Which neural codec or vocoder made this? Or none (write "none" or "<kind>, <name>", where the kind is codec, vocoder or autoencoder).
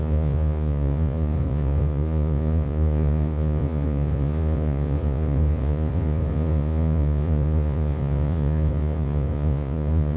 vocoder, Vocos